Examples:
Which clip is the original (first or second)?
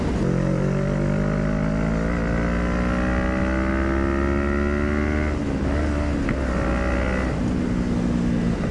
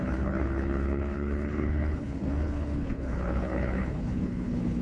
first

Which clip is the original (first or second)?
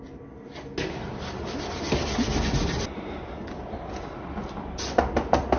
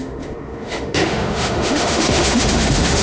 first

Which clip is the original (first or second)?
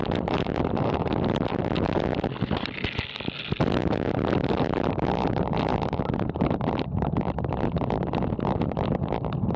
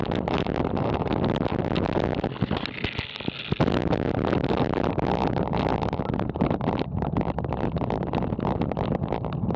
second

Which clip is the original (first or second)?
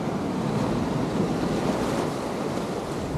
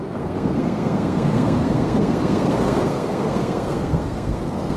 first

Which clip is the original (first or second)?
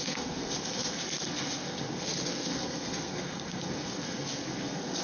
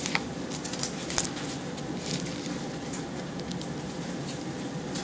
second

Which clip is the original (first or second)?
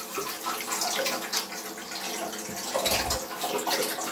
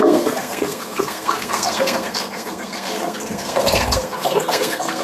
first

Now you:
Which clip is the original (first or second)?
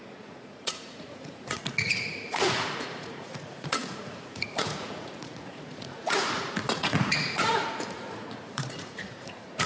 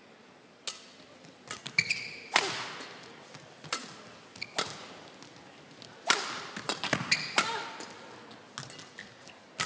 second